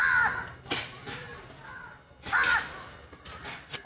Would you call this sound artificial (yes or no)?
no